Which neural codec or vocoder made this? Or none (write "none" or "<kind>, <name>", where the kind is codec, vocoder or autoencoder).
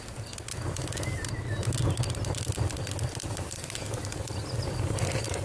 none